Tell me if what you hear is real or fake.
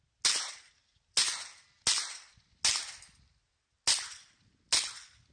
real